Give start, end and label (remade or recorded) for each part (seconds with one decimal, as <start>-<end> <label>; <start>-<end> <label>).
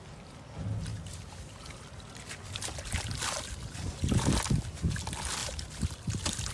0.0-6.5 recorded